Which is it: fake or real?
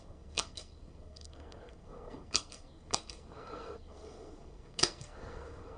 fake